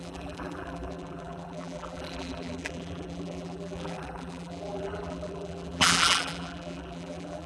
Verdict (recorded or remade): remade